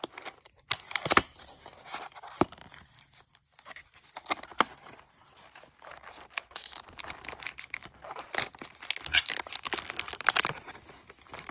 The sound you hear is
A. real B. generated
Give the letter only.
B